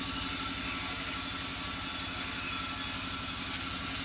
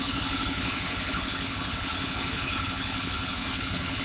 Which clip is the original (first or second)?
first